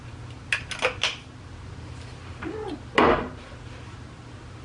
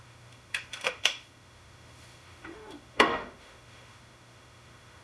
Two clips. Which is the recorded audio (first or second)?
first